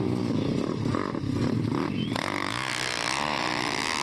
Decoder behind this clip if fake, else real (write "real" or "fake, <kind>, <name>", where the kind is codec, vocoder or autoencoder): real